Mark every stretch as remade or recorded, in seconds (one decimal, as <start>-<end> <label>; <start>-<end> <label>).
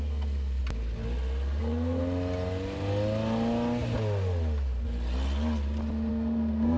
0.0-0.6 remade; 0.6-1.6 recorded; 1.6-2.0 remade; 2.0-6.1 recorded; 6.1-6.8 remade